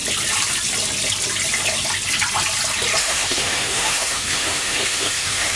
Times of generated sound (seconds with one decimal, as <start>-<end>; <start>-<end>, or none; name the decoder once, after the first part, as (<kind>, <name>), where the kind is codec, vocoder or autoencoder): 3.0-5.6 (autoencoder, DAC-VAE)